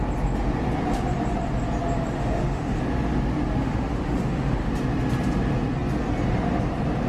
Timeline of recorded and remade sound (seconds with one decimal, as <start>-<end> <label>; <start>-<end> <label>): 0.0-2.2 recorded; 2.2-2.8 remade; 2.8-3.6 recorded; 3.6-4.7 remade; 4.7-7.1 recorded